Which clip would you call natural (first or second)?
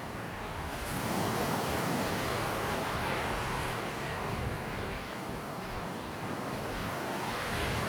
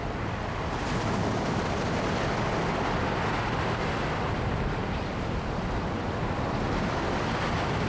second